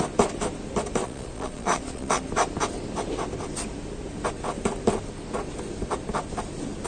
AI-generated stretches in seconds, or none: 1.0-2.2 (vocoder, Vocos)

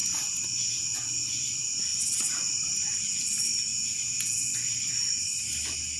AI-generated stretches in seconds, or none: 3.7-4.5 (vocoder, Vocos)

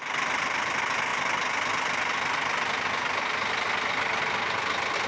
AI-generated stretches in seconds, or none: none

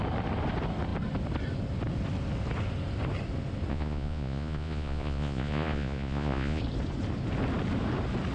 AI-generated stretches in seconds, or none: 3.7-6.6 (vocoder, Vocos)

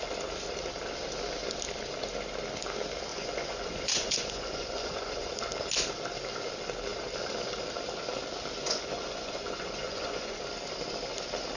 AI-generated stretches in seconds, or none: 3.1-5.3 (vocoder, Vocos); 8.6-10.4